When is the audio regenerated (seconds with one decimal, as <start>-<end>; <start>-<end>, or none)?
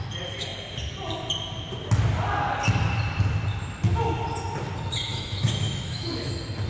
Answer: 5.1-6.3